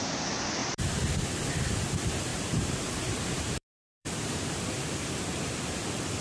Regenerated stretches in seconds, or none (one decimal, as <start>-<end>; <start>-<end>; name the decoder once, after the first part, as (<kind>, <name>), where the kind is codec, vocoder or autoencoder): 0.6-1.2 (vocoder, BigVGAN v2); 2.3-4.6